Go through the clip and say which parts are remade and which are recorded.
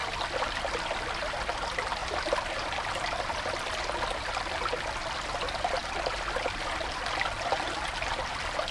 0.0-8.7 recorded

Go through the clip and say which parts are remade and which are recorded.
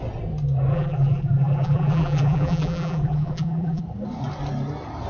0.0-0.7 recorded; 0.7-3.8 remade; 3.8-5.1 recorded